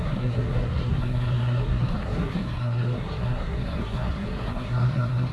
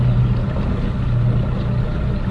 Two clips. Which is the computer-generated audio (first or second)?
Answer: first